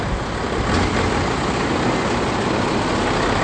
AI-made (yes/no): no